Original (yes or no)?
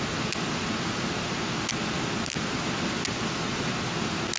yes